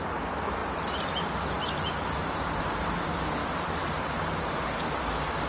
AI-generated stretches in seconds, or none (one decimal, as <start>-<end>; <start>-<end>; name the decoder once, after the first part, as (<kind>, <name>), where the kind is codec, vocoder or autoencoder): none

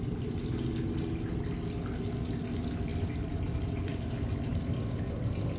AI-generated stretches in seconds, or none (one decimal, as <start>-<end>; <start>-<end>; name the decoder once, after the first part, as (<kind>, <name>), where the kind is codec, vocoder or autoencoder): 2.9-4.1 (vocoder, BigVGAN v2); 4.5-5.6